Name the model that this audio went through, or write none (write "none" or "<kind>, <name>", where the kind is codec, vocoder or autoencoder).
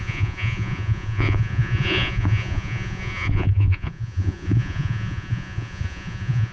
vocoder, Vocos